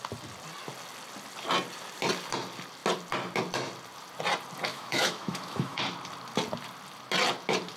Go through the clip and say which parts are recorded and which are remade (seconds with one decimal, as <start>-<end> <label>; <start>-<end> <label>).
0.0-4.7 recorded; 4.7-5.8 remade; 5.8-7.8 recorded